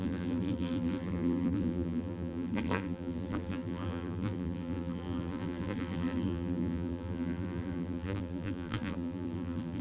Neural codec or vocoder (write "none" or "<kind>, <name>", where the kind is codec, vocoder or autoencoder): vocoder, BigVGAN v2